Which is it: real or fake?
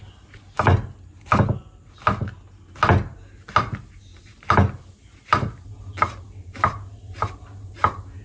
real